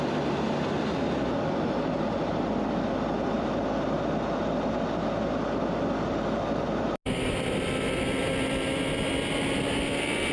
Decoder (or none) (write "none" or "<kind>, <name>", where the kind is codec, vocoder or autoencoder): none